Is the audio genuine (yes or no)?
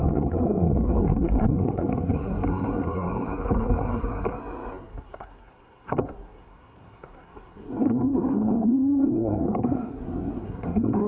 no